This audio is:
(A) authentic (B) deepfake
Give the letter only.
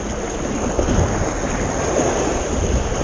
A